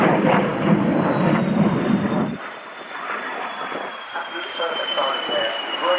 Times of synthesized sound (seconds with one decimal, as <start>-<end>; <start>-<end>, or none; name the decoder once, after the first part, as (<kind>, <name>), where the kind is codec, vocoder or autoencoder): 0.0-3.3 (vocoder, BigVGAN v2); 4.4-6.0